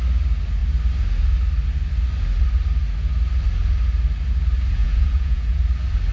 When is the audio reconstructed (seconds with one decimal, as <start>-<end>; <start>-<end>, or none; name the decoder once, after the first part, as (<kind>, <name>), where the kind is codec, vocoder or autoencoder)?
4.8-5.6 (vocoder, Vocos)